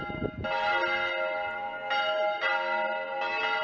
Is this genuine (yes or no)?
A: yes